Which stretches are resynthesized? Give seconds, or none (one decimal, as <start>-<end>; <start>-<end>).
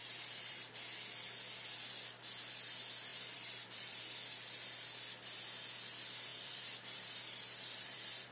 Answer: 0.0-0.7; 3.1-4.0; 6.3-8.3